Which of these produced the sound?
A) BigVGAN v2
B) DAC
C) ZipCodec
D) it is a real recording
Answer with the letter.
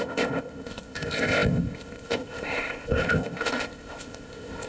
C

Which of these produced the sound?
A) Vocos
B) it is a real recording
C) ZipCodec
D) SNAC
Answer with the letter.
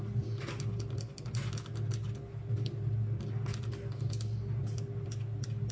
B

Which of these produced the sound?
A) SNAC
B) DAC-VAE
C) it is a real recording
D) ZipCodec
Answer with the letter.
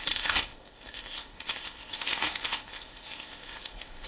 D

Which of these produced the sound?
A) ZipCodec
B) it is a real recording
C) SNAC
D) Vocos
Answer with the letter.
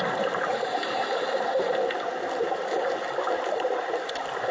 B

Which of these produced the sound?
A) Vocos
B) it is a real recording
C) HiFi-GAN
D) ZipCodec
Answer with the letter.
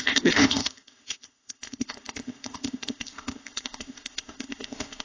D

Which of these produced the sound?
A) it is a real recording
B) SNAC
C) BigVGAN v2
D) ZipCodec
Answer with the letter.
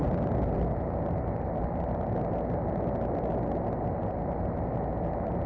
A